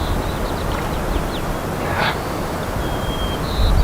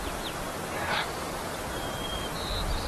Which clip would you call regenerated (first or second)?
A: second